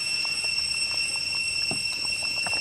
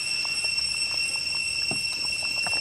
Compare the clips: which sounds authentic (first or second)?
second